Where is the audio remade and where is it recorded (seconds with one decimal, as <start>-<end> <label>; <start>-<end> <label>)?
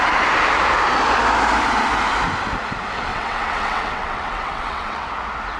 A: 0.0-3.1 recorded; 3.1-5.1 remade; 5.1-5.6 recorded